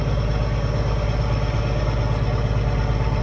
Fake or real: real